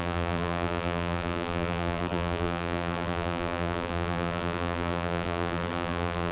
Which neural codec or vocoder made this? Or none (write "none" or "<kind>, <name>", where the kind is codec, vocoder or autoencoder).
vocoder, BigVGAN v2